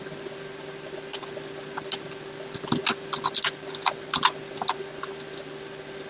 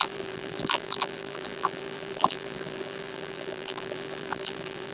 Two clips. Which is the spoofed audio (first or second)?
second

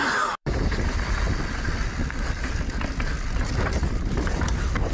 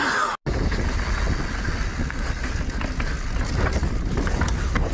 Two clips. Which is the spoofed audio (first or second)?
first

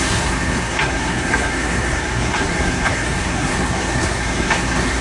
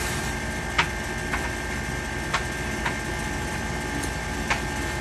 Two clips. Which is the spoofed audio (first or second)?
first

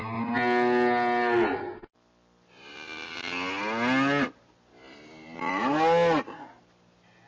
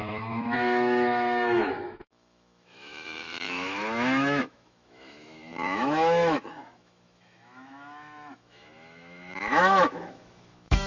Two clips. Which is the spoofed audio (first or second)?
second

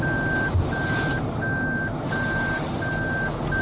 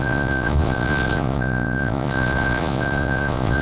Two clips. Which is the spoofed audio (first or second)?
second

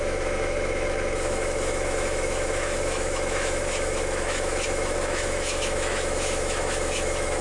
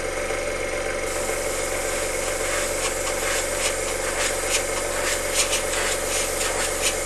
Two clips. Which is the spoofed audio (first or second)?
first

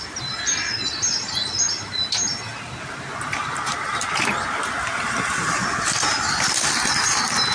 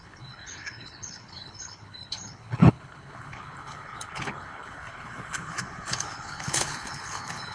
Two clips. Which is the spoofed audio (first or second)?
second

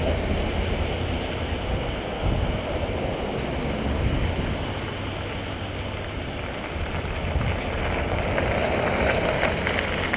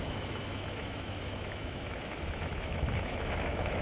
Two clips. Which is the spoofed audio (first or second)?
second